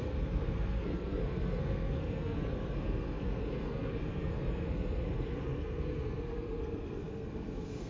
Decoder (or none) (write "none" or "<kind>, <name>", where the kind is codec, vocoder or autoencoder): codec, SNAC